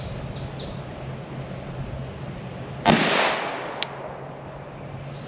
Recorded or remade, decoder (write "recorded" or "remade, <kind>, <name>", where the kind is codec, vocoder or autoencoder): recorded